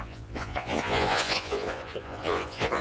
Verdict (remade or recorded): remade